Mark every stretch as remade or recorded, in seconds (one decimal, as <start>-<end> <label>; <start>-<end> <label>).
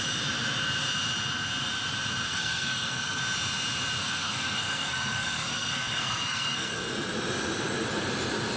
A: 0.0-2.3 recorded; 2.3-3.2 remade; 3.2-4.0 recorded; 4.0-6.8 remade; 6.8-8.6 recorded